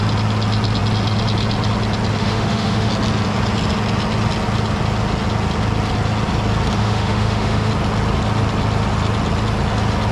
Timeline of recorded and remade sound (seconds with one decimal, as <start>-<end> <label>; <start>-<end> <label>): 0.0-2.2 recorded; 2.2-2.9 remade; 2.9-6.8 recorded; 6.8-7.7 remade; 7.7-10.1 recorded